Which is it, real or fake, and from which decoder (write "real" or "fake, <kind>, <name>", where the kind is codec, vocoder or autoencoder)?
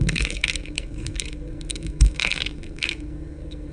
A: fake, codec, SNAC